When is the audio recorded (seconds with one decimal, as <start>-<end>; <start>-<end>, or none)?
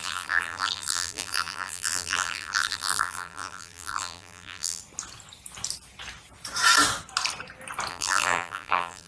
4.8-7.9